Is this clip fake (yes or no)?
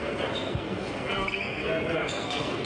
yes